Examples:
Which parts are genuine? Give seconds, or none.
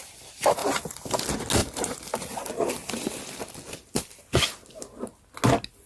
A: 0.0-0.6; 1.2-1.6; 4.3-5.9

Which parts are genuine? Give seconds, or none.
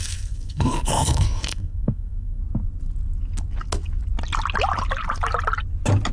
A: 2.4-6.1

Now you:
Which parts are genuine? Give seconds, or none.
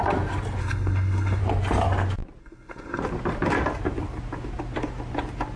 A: 0.0-0.6; 1.4-2.4; 3.0-5.6